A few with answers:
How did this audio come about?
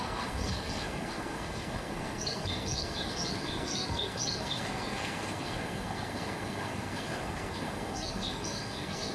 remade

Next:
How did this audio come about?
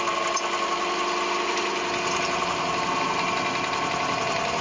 recorded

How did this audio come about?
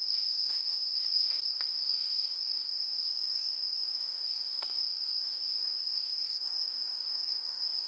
remade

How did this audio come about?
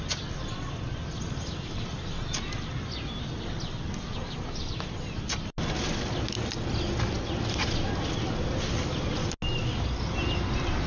recorded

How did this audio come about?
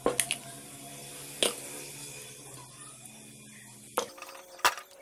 recorded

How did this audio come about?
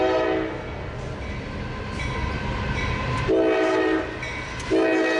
recorded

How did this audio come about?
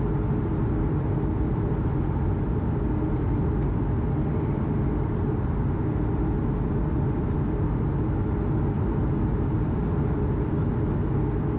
recorded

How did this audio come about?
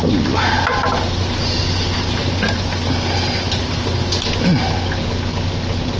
recorded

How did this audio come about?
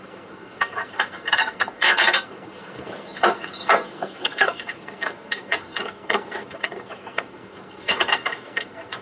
remade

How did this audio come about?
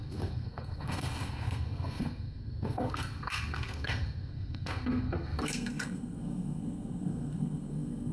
remade